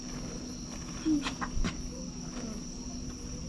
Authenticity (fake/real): real